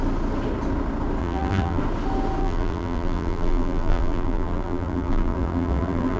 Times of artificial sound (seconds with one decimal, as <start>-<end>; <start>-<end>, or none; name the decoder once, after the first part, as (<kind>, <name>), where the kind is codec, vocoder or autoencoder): 1.2-1.8 (vocoder, BigVGAN v2); 2.4-6.2